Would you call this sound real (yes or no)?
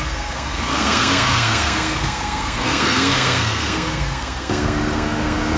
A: no